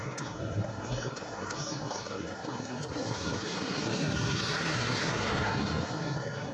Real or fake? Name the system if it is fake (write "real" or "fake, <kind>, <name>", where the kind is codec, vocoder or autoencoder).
fake, codec, SNAC